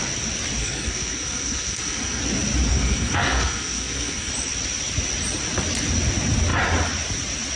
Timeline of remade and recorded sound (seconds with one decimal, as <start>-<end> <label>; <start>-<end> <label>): 0.0-0.6 recorded; 0.6-2.2 remade; 2.2-2.7 recorded; 2.7-4.3 remade; 4.3-7.6 recorded